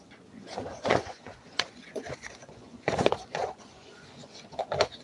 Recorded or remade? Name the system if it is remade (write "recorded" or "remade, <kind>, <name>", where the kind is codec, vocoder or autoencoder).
remade, vocoder, Vocos